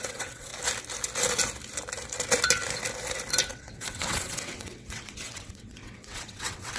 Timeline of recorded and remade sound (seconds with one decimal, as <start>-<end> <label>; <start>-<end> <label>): 0.0-0.5 remade; 0.5-3.5 recorded; 3.5-6.8 remade

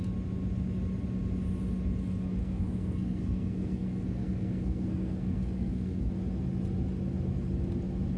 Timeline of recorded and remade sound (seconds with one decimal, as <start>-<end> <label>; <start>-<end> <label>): 0.0-2.4 recorded; 2.4-6.1 remade; 6.1-8.2 recorded